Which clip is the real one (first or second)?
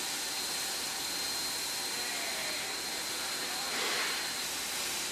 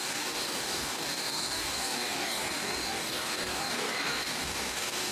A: first